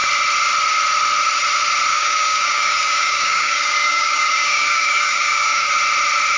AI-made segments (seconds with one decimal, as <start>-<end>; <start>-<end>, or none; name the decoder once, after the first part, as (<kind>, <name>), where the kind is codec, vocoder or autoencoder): 1.9-5.7 (codec, DAC)